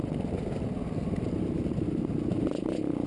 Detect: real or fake real